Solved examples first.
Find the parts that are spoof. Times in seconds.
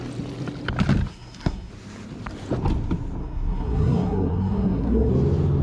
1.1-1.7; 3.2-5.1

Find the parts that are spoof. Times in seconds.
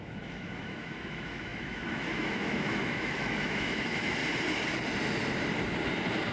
0.0-4.2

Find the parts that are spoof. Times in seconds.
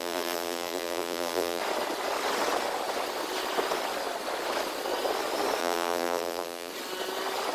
0.0-1.6; 5.6-6.7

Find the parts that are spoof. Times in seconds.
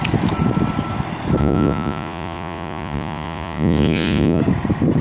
1.4-4.4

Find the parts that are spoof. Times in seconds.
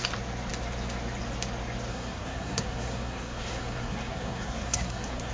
1.9-5.3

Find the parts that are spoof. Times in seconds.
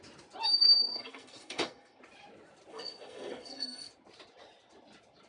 0.9-2.0; 2.7-3.9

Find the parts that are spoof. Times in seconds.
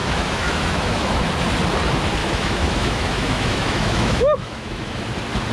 0.0-1.3; 2.2-5.0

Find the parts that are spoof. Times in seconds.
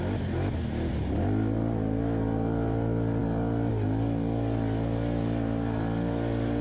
none